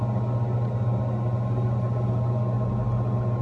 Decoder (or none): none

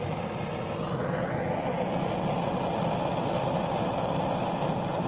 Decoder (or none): none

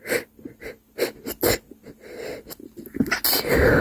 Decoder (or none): none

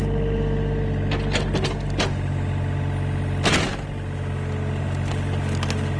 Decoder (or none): none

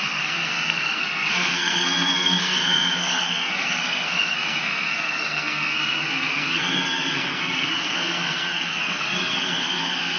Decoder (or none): codec, SNAC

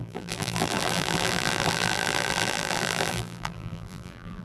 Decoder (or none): vocoder, BigVGAN v2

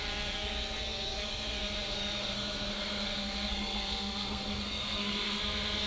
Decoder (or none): codec, SNAC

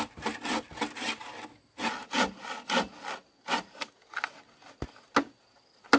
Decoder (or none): none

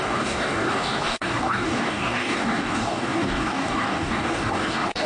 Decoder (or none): codec, DAC